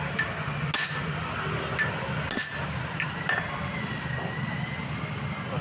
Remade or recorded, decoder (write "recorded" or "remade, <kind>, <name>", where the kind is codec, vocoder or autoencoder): recorded